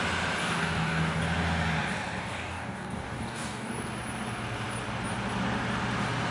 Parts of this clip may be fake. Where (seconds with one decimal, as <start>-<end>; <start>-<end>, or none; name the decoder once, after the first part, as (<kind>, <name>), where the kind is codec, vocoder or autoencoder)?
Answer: 0.4-1.2 (codec, DAC); 2.2-3.7